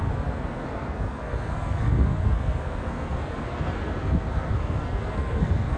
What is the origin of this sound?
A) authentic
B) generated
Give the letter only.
B